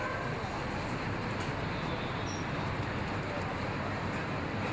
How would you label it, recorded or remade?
recorded